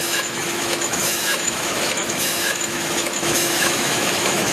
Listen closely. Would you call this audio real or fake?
fake